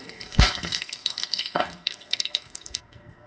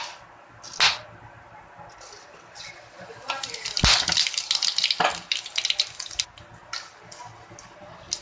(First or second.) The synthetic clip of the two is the first